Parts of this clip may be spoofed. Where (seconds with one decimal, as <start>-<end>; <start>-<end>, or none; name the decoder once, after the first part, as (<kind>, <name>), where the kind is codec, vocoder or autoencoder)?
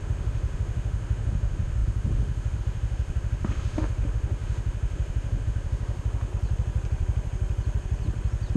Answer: 0.0-6.3 (autoencoder, DAC-VAE)